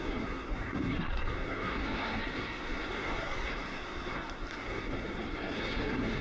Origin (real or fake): fake